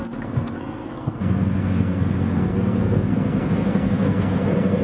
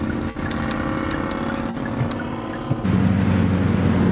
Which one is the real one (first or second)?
second